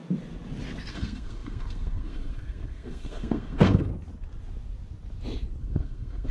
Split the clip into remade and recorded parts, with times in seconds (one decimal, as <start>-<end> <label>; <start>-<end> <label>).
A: 0.0-0.9 recorded; 0.9-3.9 remade; 3.9-5.6 recorded; 5.6-6.3 remade